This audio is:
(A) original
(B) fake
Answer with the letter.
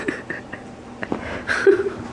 A